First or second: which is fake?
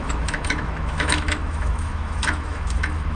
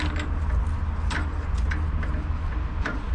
first